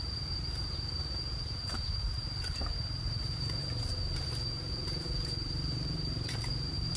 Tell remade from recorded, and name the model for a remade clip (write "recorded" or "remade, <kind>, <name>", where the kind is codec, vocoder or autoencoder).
remade, vocoder, BigVGAN v2